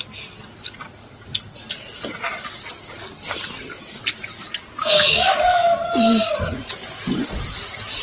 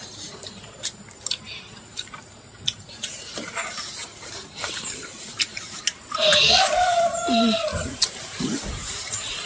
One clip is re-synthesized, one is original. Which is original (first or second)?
first